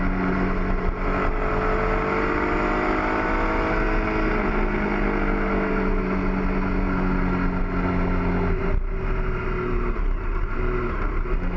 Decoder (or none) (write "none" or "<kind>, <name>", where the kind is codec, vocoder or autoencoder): none